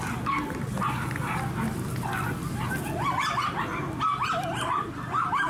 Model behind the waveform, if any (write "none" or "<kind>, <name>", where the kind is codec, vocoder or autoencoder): none